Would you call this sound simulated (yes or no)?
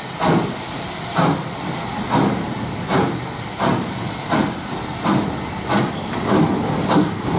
no